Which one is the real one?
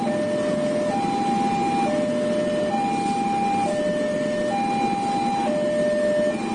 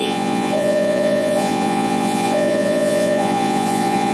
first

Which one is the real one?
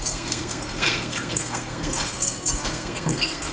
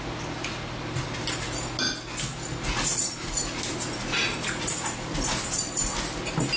second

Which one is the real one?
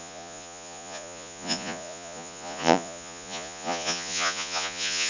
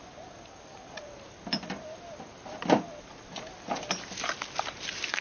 second